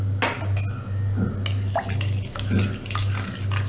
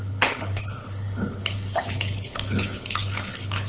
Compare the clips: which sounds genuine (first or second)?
first